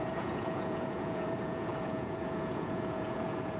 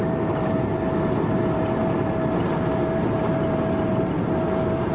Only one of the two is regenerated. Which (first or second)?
first